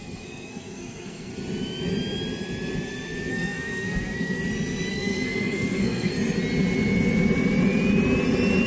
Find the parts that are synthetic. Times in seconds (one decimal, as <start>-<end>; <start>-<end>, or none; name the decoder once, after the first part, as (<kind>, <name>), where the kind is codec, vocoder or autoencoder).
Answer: 0.0-1.3 (codec, SNAC); 3.3-4.4; 4.9-6.1